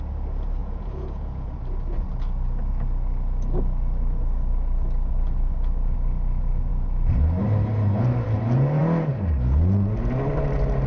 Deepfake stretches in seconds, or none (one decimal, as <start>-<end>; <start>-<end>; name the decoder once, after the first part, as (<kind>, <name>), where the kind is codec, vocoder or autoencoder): 0.6-1.6 (vocoder, Vocos)